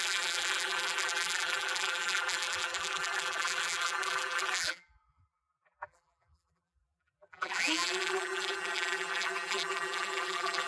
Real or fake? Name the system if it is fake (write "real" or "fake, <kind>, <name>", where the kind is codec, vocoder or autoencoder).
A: fake, vocoder, BigVGAN v2